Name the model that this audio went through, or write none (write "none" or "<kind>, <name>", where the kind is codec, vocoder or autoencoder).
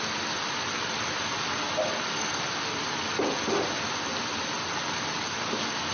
none